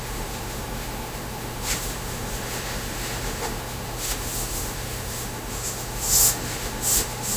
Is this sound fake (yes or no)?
yes